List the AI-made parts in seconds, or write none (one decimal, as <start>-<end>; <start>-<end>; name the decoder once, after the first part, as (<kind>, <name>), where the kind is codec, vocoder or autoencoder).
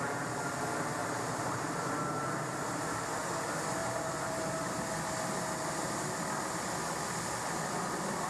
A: 1.0-1.9 (vocoder, BigVGAN v2); 3.8-4.9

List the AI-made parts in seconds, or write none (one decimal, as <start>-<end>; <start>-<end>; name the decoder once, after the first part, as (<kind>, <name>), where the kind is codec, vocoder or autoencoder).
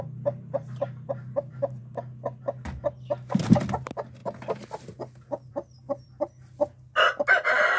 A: none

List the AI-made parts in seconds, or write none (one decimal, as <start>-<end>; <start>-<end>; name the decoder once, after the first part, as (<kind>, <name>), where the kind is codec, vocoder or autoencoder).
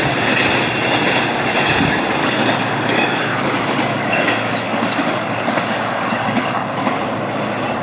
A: 2.2-6.9 (codec, DAC)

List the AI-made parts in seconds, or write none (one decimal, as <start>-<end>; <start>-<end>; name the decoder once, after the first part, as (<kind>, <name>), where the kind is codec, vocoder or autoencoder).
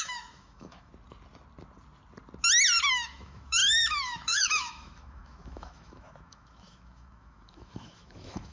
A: 0.0-0.9 (autoencoder, DAC-VAE); 2.9-8.5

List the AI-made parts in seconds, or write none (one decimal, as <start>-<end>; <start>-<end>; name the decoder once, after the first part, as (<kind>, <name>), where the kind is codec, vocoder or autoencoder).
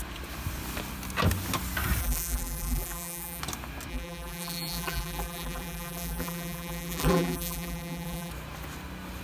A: 2.0-3.4 (vocoder, BigVGAN v2); 3.9-8.3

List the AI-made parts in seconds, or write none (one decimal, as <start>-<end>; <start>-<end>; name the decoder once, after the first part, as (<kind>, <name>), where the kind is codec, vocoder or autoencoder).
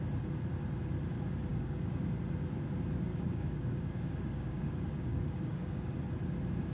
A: 1.5-2.0 (codec, DAC); 3.1-5.9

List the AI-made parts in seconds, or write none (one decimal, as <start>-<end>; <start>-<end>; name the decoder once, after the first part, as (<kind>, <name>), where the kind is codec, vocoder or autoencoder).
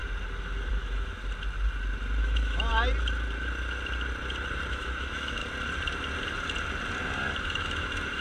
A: 0.7-1.2 (autoencoder, DAC-VAE); 2.2-2.7; 4.7-5.4; 7.4-8.2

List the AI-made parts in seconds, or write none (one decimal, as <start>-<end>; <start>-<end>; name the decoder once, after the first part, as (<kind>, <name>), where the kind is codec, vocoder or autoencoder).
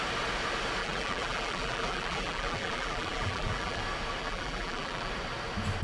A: 0.8-3.8 (vocoder, BigVGAN v2); 4.2-5.1